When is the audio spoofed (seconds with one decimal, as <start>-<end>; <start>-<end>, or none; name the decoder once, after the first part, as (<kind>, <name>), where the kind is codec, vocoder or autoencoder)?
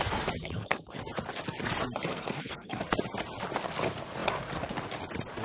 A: 0.4-1.0 (codec, SNAC); 2.1-2.8